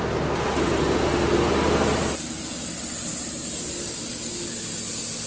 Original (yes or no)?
yes